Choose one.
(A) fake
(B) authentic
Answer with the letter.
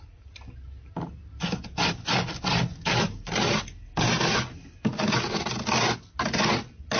B